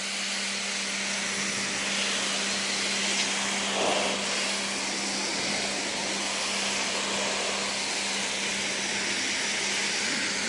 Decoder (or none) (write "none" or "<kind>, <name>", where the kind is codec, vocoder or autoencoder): none